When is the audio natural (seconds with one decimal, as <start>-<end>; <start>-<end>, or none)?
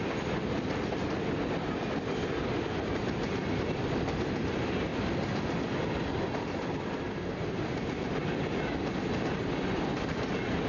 0.0-10.7